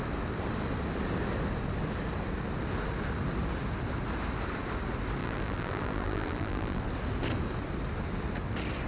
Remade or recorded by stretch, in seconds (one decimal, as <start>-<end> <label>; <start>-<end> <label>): 0.0-5.2 recorded; 5.2-6.8 remade; 6.8-8.9 recorded